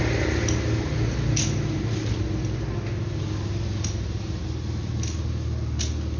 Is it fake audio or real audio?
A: real